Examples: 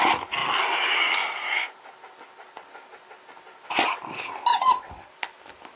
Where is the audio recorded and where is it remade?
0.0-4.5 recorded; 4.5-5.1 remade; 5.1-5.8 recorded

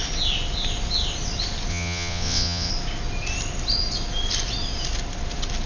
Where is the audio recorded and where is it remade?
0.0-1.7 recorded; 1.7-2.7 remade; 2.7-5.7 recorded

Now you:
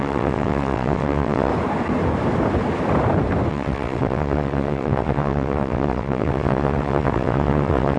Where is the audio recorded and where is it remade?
0.0-1.5 remade; 1.5-3.5 recorded; 3.5-8.0 remade